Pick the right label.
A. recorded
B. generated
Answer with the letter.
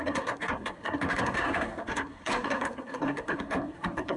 B